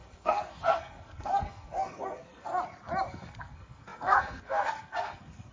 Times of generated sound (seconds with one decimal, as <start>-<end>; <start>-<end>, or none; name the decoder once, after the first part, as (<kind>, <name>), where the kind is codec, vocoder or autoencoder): 0.0-2.5 (codec, SNAC); 3.1-5.5